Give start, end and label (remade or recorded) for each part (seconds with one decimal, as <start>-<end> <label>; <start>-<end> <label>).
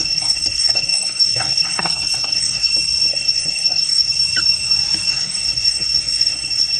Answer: 0.0-2.7 remade; 2.7-3.1 recorded; 3.1-4.1 remade; 4.1-5.1 recorded; 5.1-6.8 remade